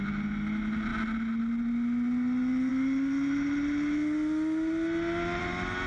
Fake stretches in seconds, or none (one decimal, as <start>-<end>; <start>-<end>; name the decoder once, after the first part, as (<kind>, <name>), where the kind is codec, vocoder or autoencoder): none